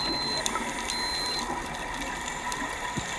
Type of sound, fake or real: real